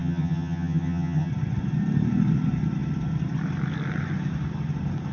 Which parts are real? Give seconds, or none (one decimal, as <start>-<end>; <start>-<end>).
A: 1.3-5.1